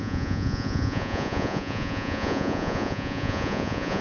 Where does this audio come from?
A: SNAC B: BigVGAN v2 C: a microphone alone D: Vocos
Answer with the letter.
D